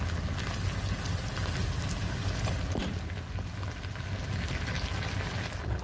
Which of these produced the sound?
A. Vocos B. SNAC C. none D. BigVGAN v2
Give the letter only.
C